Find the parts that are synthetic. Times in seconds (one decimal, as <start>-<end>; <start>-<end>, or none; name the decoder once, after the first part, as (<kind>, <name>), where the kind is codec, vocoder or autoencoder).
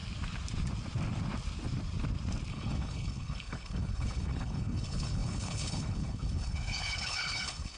2.5-7.8 (codec, HILCodec)